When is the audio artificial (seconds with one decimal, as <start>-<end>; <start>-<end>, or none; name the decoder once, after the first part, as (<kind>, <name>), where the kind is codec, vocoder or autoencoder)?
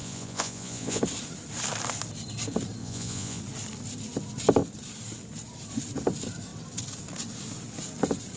0.0-1.0 (vocoder, Vocos); 2.8-3.4